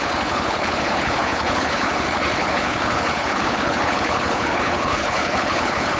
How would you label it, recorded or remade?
remade